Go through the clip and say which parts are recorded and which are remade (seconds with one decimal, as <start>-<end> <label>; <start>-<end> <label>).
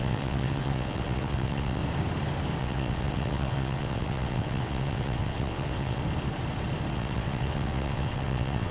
0.0-1.8 remade; 1.8-2.6 recorded; 2.6-6.0 remade; 6.0-6.9 recorded; 6.9-8.7 remade